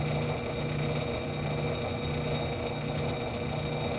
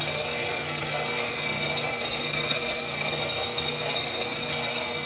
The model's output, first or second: second